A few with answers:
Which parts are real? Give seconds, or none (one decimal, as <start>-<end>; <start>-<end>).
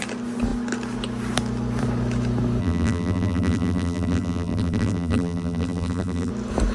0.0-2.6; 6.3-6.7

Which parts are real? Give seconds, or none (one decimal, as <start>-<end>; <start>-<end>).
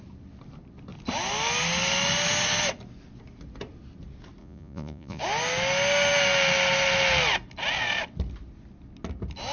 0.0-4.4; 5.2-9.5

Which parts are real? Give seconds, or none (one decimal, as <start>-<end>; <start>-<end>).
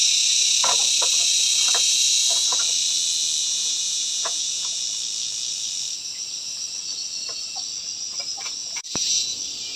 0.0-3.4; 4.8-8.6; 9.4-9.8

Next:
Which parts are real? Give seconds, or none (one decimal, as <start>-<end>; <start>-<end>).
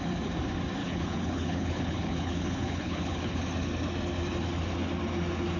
0.0-0.8; 3.4-5.6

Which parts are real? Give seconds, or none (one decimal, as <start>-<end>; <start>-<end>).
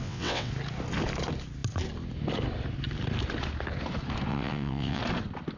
0.5-4.3; 5.0-5.6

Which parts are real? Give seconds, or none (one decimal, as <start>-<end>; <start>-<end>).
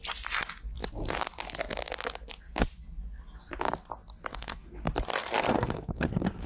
0.0-4.3; 4.8-5.2